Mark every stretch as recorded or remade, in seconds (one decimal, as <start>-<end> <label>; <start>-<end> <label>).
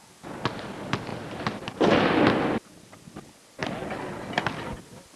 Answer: 0.0-5.2 recorded